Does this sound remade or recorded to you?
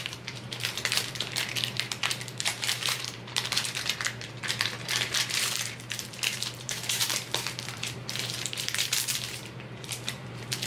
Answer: remade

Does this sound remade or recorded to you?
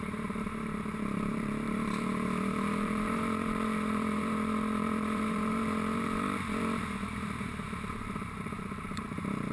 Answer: remade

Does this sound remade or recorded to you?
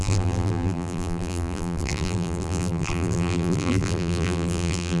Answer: remade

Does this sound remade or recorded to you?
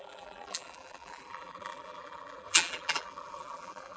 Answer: remade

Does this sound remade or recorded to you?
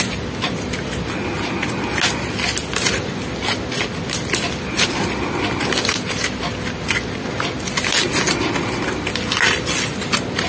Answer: recorded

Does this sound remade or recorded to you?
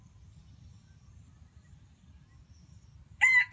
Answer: remade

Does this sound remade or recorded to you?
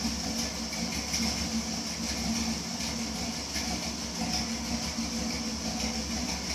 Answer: recorded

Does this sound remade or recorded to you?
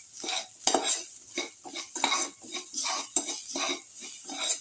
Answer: recorded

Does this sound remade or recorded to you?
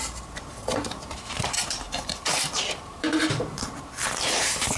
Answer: remade